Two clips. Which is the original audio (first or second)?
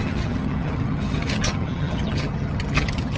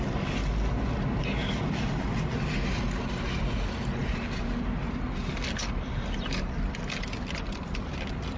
second